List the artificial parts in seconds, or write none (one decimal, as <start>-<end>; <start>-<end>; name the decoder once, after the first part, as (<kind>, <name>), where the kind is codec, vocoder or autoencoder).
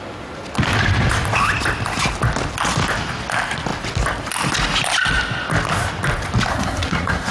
6.5-7.3 (codec, SNAC)